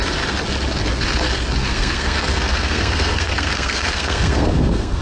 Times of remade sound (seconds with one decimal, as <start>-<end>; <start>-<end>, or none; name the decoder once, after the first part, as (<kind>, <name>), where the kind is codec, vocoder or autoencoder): 1.7-5.0 (codec, SNAC)